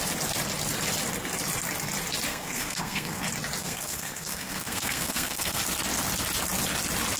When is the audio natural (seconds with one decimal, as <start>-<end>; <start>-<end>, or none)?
0.0-2.3; 3.2-3.6; 5.6-7.2